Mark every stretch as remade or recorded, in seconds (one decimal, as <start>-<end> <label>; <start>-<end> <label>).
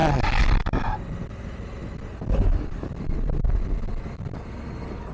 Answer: 0.0-5.1 recorded